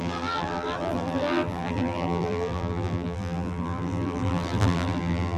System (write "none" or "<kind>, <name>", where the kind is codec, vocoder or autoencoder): vocoder, BigVGAN v2